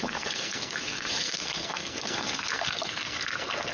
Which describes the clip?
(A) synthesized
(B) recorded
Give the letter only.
A